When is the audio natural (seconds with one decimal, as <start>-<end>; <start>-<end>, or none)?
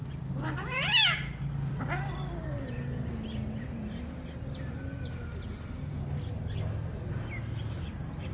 0.0-8.3